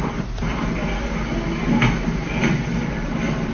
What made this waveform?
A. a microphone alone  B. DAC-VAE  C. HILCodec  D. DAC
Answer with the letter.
A